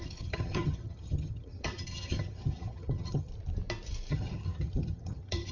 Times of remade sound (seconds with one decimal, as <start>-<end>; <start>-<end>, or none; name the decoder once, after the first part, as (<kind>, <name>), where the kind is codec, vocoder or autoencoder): 0.0-3.3 (vocoder, HiFi-GAN); 4.1-5.5